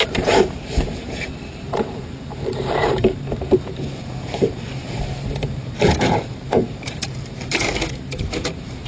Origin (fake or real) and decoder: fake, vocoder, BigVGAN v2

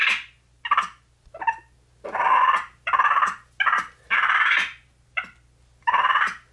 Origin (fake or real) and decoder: real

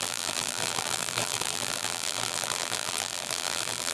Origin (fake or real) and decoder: fake, vocoder, BigVGAN v2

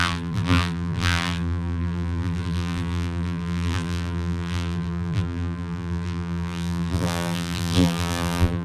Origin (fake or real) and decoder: fake, vocoder, BigVGAN v2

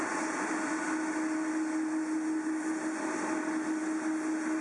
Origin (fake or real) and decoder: real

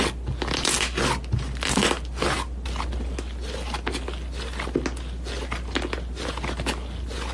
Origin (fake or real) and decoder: real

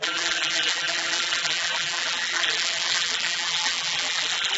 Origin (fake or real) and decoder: fake, vocoder, BigVGAN v2